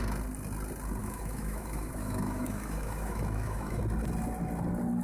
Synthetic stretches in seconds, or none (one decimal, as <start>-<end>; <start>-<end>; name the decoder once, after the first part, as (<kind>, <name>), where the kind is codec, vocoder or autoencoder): 1.0-3.8 (autoencoder, DAC-VAE)